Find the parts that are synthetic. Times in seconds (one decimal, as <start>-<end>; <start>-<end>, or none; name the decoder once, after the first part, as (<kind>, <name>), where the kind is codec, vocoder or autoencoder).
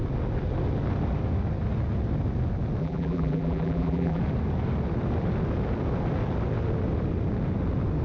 2.8-4.2 (vocoder, BigVGAN v2)